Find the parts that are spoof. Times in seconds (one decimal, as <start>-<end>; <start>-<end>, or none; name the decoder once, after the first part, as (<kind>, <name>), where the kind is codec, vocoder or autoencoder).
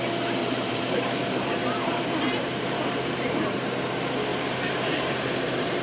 0.4-3.9 (vocoder, BigVGAN v2); 4.3-5.1